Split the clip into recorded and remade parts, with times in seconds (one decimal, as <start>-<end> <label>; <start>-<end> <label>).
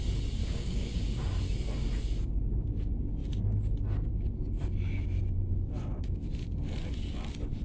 0.0-0.4 recorded; 0.4-1.2 remade; 1.2-7.6 recorded